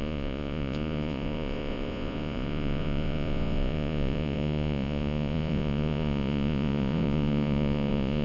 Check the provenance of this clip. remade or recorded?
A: remade